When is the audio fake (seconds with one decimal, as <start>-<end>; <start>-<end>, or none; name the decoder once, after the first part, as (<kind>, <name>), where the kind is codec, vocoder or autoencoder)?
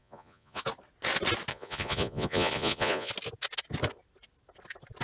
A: 0.0-0.6 (vocoder, Vocos); 1.5-3.1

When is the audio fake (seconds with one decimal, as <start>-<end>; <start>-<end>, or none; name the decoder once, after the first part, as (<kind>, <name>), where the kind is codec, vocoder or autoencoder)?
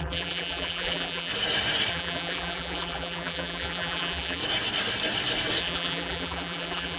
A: 0.0-1.3 (vocoder, BigVGAN v2); 1.9-4.4; 5.6-7.0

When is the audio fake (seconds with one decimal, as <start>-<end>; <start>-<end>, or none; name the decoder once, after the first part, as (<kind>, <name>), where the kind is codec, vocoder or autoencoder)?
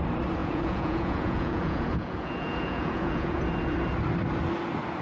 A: 0.4-3.4 (vocoder, Vocos)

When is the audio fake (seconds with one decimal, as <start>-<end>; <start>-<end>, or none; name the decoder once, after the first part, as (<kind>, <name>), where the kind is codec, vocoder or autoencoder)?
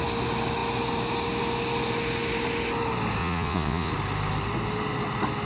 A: 3.2-3.9 (vocoder, Vocos)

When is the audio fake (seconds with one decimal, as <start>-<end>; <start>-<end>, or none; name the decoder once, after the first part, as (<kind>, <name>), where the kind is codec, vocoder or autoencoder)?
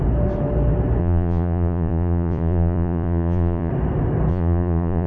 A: 1.0-3.7 (vocoder, Vocos); 4.3-5.1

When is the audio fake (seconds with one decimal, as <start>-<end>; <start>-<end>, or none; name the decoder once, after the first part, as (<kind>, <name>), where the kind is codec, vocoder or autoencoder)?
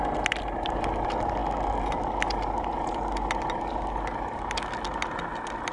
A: none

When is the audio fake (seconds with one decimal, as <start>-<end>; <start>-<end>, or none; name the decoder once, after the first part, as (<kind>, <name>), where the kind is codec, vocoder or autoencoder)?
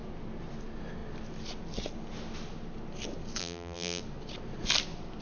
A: 3.4-4.0 (vocoder, BigVGAN v2)